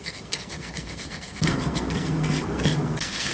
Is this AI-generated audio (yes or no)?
yes